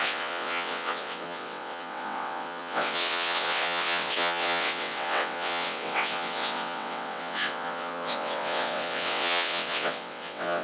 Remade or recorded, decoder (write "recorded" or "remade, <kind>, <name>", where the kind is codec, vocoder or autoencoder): remade, vocoder, WaveNeXt